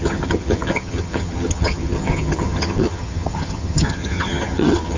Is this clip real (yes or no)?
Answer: no